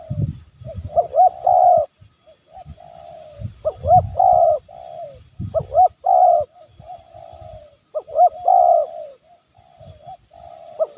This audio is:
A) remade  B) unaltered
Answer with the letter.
B